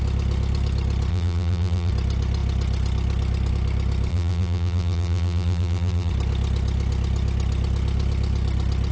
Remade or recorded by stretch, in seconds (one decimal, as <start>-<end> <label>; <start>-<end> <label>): 0.0-1.1 recorded; 1.1-1.9 remade; 1.9-4.1 recorded; 4.1-6.1 remade; 6.1-8.9 recorded